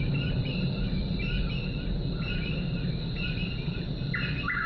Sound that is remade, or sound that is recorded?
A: recorded